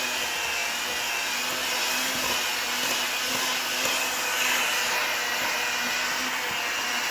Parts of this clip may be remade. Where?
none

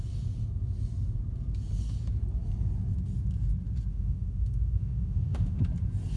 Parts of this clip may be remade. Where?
3.9-5.6

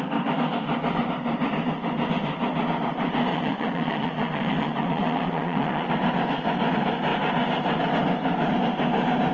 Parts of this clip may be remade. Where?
3.3-5.9

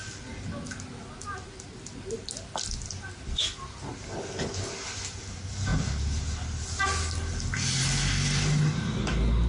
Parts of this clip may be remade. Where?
none